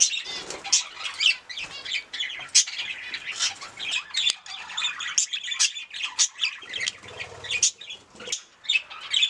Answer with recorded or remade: recorded